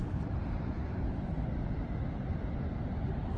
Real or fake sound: fake